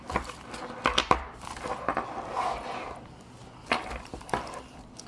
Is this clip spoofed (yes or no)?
no